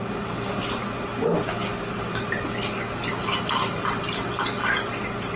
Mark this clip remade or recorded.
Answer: recorded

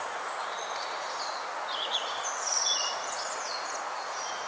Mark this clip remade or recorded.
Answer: remade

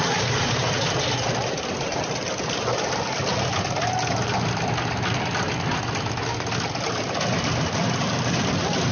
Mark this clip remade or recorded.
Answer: recorded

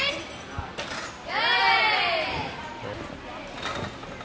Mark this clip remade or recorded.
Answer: recorded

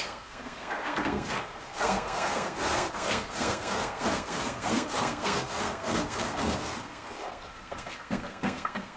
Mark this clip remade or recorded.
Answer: remade